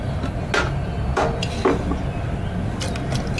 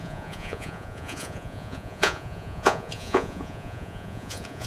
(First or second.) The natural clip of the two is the first